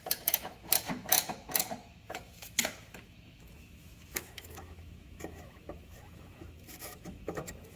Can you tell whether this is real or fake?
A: fake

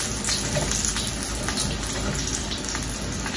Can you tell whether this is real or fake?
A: real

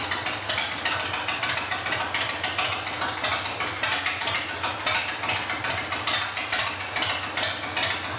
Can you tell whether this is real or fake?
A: real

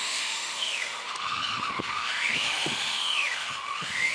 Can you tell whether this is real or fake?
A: fake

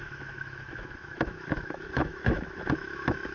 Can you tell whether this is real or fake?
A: fake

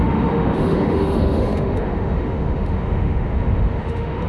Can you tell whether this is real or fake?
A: fake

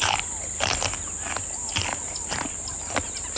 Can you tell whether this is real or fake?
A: real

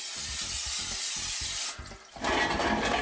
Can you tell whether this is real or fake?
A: real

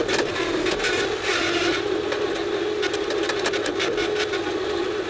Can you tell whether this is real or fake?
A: real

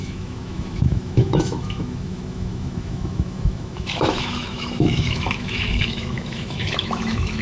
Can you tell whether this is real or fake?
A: fake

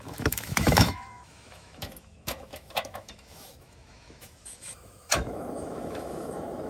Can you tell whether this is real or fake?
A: fake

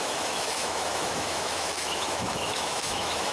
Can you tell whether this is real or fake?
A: fake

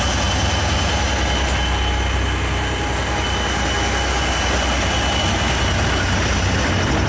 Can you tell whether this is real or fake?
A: real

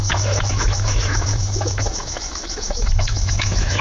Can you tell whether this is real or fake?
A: fake